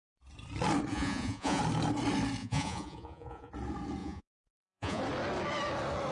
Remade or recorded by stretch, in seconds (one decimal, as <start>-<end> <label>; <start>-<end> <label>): 0.0-0.9 recorded; 0.9-1.6 remade; 1.6-2.4 recorded; 2.4-3.5 remade; 3.5-4.0 recorded; 4.0-5.0 remade; 5.0-6.1 recorded